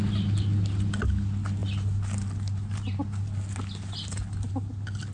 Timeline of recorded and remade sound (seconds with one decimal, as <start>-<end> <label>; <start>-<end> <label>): 0.0-5.1 recorded